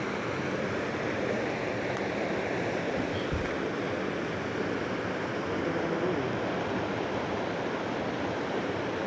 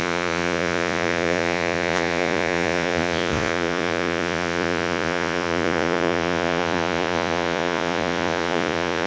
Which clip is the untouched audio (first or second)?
first